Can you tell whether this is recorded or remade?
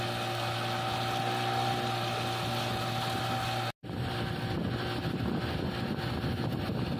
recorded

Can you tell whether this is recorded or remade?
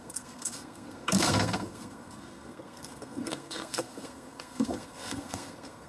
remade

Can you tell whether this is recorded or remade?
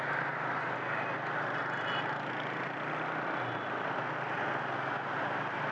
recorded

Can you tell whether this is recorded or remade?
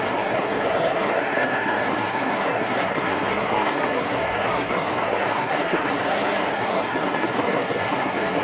remade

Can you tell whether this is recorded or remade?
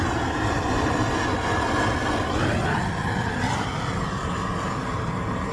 recorded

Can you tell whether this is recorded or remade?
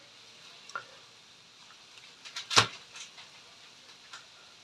recorded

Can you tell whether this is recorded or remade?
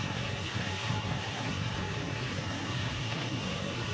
remade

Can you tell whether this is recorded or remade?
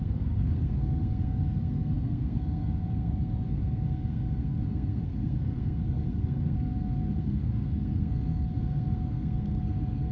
remade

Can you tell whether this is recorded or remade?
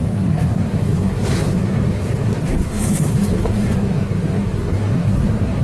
remade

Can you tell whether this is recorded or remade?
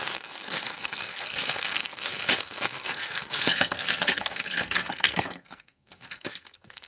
remade